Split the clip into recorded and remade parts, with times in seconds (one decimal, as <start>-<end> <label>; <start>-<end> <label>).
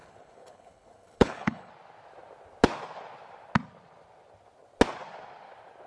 0.0-1.7 remade; 1.7-5.9 recorded